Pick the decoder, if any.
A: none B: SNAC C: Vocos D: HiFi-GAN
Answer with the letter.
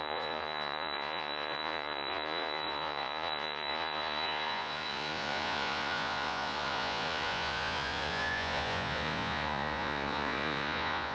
C